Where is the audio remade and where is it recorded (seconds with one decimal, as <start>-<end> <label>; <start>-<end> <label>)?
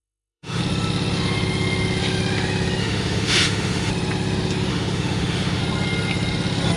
0.0-0.6 remade; 0.6-2.8 recorded; 2.8-3.9 remade; 3.9-4.7 recorded; 4.7-5.6 remade; 5.6-6.8 recorded